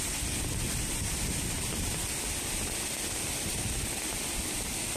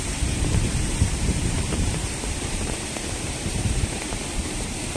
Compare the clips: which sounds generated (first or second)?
second